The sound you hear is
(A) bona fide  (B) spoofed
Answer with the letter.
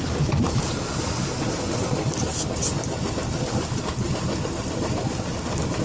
A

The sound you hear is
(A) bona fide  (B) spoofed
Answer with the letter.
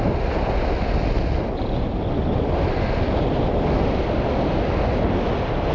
A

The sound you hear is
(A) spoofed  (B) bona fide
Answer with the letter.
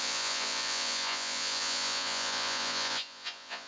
A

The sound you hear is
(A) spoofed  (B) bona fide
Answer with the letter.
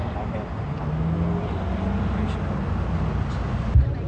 B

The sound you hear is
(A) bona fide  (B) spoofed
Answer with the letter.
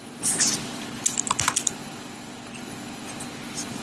A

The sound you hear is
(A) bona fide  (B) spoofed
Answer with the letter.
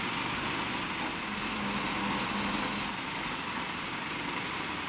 A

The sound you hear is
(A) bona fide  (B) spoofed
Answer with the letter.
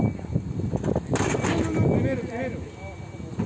A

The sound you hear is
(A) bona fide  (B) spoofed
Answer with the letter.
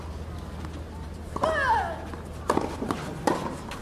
A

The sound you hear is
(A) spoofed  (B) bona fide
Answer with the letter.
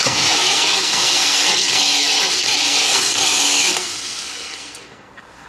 A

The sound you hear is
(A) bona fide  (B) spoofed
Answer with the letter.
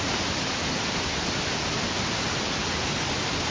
A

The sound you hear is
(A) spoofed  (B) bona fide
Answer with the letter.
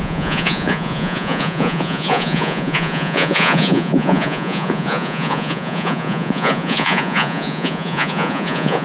A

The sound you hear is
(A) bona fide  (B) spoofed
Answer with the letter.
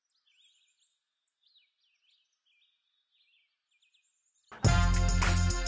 A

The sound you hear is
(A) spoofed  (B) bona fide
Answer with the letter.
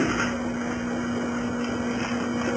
B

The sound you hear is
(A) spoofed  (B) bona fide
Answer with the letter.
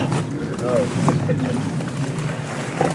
B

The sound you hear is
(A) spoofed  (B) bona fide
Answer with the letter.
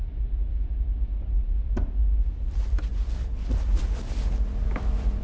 B